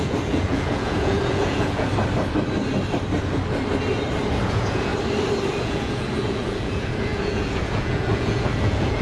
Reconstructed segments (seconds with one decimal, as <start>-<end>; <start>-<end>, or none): 0.0-1.9; 4.3-4.9; 5.6-9.0

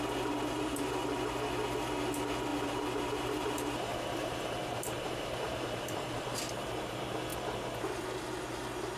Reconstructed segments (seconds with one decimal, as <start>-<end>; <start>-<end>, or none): 2.5-6.4

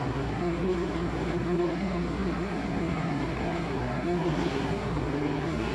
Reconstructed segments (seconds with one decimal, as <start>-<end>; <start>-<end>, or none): 0.0-5.7